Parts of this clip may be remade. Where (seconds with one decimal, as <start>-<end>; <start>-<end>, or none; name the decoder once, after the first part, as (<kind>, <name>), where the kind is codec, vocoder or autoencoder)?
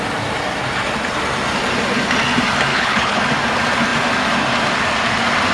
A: 2.7-3.2 (codec, HILCodec)